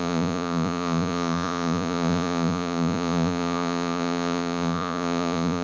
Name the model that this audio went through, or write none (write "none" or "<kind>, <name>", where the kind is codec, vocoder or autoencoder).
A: vocoder, Vocos